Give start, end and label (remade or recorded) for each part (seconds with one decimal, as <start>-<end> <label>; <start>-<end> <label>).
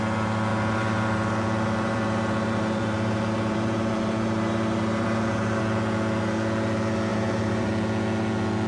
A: 0.0-0.5 recorded; 0.5-5.6 remade; 5.6-7.1 recorded; 7.1-7.7 remade; 7.7-8.7 recorded